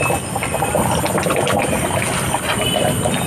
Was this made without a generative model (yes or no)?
yes